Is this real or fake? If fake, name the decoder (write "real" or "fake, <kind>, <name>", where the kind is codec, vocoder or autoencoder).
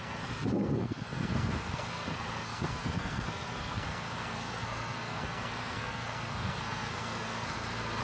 fake, codec, SNAC